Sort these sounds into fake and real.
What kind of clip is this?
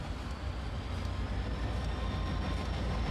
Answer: real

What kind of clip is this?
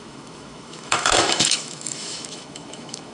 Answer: fake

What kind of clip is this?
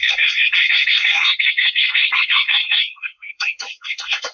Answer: fake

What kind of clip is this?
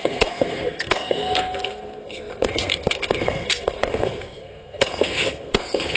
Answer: fake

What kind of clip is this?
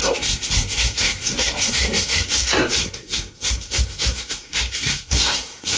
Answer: fake